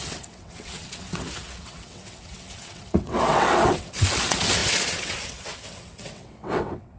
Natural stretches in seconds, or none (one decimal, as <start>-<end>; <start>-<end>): none